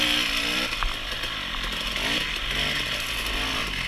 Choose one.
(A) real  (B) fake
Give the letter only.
A